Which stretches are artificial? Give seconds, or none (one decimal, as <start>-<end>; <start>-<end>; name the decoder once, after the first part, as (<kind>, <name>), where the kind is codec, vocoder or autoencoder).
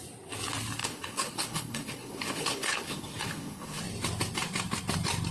0.8-3.8 (codec, HILCodec)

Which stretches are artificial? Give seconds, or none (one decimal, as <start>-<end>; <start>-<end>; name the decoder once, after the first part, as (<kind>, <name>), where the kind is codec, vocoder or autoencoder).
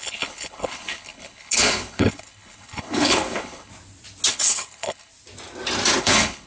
0.0-3.7 (codec, HILCodec); 4.3-5.1; 6.0-6.5